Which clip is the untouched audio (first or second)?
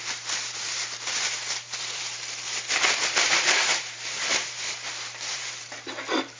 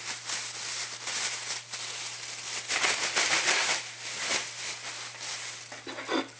second